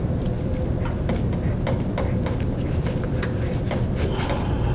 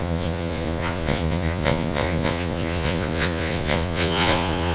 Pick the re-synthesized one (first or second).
second